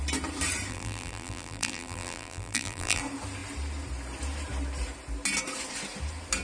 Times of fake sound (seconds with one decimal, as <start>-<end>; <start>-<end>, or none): 0.7-3.0